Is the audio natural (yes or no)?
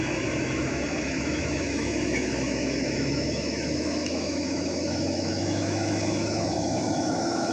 no